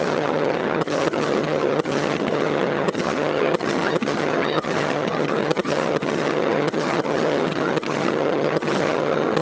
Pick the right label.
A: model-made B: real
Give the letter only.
A